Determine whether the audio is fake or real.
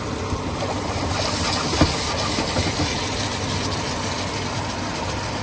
real